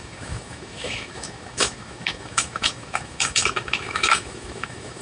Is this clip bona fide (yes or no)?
no